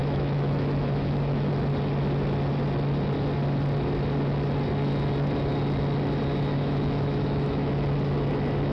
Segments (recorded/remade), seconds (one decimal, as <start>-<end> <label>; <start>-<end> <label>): 0.0-1.5 remade; 1.5-6.5 recorded; 6.5-7.7 remade; 7.7-8.7 recorded